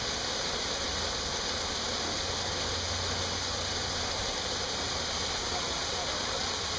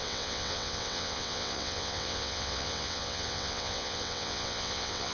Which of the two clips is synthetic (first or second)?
second